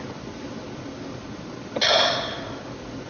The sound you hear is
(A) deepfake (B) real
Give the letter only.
B